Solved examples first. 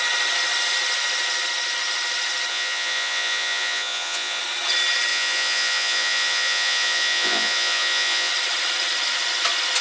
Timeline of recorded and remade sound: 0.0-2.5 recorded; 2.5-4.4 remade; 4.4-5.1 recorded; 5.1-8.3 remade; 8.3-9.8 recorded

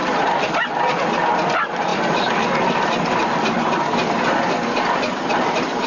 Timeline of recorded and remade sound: 0.0-5.9 recorded

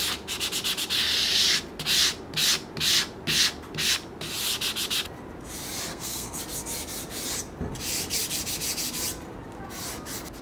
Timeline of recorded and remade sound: 0.0-5.9 recorded; 5.9-6.4 remade; 6.4-10.4 recorded

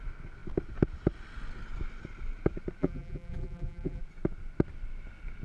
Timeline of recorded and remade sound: 0.0-2.8 recorded; 2.8-4.0 remade; 4.0-5.4 recorded